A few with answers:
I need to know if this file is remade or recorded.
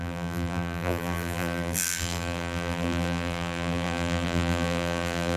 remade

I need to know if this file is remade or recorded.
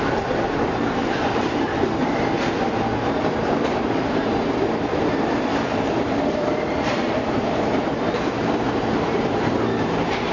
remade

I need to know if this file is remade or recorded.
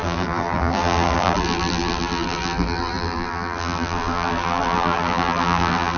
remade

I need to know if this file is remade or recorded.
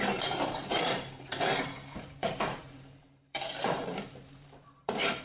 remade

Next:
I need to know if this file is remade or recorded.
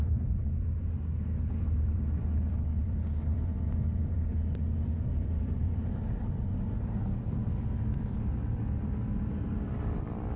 remade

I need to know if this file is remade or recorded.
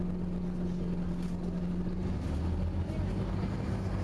recorded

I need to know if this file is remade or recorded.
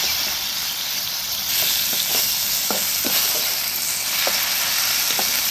recorded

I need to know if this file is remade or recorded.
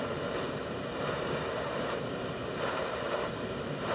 remade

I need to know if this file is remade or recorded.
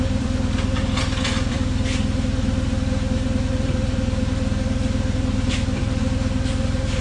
remade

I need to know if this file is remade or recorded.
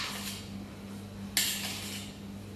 recorded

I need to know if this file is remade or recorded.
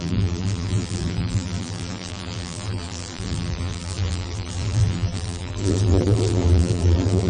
remade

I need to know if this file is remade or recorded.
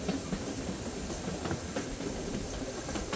remade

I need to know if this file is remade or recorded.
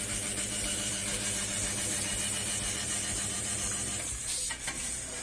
remade